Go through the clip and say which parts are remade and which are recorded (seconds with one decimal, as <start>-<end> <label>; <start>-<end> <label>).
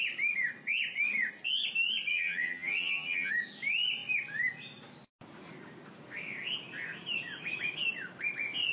0.0-2.1 recorded; 2.1-3.3 remade; 3.3-8.7 recorded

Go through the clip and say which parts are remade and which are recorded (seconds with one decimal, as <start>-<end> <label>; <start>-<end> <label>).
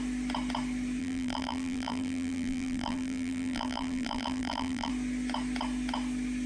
0.0-1.0 recorded; 1.0-4.9 remade; 4.9-6.5 recorded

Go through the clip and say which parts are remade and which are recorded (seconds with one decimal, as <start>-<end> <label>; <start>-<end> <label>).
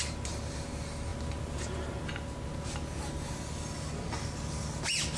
0.0-5.2 recorded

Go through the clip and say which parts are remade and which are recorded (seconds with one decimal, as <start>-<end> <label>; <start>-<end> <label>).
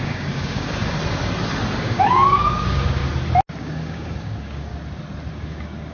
0.0-0.8 remade; 0.8-1.8 recorded; 1.8-3.0 remade; 3.0-3.6 recorded; 3.6-4.7 remade; 4.7-5.3 recorded; 5.3-5.9 remade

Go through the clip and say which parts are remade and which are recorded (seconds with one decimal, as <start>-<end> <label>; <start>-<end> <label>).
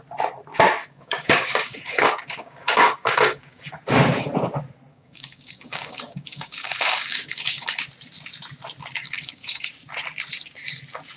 0.0-0.8 recorded; 0.8-3.6 remade; 3.6-4.9 recorded; 4.9-7.8 remade; 7.8-9.0 recorded; 9.0-9.7 remade; 9.7-11.2 recorded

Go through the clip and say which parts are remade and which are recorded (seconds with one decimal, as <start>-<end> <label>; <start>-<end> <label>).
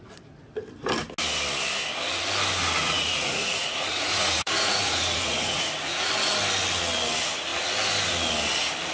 0.0-2.8 recorded; 2.8-6.1 remade; 6.1-8.9 recorded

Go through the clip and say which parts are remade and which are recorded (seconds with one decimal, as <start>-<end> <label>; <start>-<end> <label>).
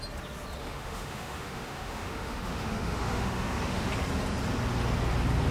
0.0-0.6 recorded; 0.6-3.9 remade; 3.9-5.5 recorded